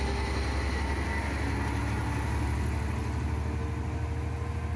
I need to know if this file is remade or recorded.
recorded